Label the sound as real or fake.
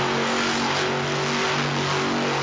real